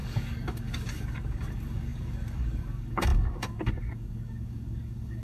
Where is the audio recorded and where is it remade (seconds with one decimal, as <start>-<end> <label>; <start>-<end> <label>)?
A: 0.0-5.2 remade